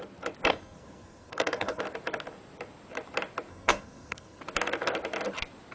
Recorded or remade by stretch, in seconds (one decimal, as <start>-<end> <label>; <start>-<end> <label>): 0.0-0.5 recorded; 0.5-1.8 remade; 1.8-3.5 recorded; 3.5-4.4 remade; 4.4-5.7 recorded